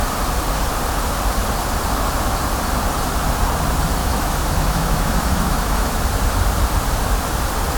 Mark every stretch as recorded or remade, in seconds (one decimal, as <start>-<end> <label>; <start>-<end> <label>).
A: 0.0-4.0 recorded; 4.0-6.0 remade; 6.0-7.8 recorded